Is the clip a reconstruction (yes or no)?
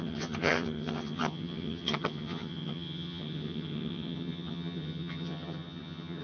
yes